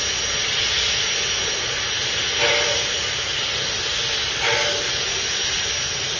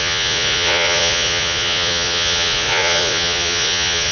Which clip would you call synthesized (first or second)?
second